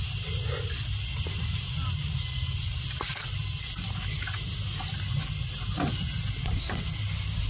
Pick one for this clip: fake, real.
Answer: real